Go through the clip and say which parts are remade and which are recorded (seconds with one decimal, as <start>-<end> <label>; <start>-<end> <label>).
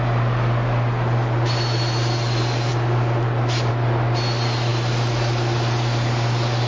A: 0.0-6.7 recorded